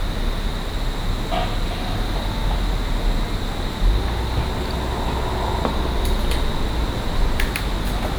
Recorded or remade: recorded